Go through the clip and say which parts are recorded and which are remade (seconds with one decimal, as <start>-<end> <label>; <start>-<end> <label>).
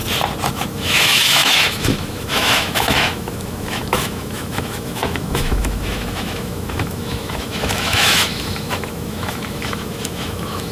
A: 0.0-0.5 recorded; 0.5-10.7 remade